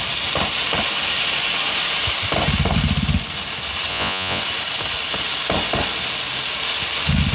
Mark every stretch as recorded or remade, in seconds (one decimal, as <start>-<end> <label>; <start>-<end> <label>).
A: 0.0-3.9 recorded; 3.9-4.4 remade; 4.4-7.3 recorded